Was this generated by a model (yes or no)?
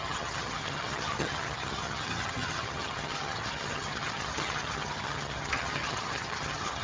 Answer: yes